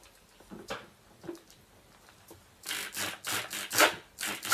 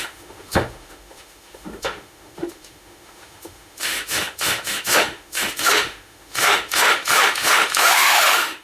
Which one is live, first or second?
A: first